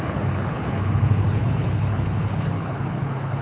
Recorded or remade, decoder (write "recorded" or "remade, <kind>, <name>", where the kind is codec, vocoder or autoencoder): remade, codec, HILCodec